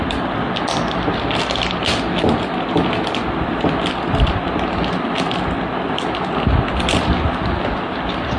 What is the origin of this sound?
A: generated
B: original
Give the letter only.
B